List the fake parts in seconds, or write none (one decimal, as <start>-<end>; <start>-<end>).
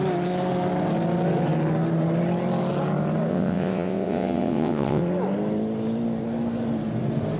3.3-5.0